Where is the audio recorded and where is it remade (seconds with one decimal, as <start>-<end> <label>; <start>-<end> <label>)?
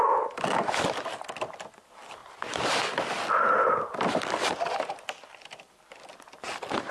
0.0-6.9 recorded